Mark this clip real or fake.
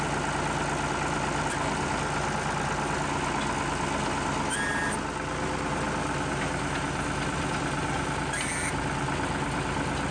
real